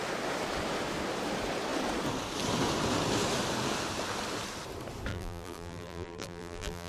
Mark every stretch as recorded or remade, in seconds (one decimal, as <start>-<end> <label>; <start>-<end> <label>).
0.0-5.1 recorded; 5.1-6.9 remade